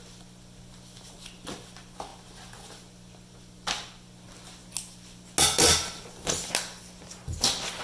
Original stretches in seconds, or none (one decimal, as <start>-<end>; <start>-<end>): 0.0-7.8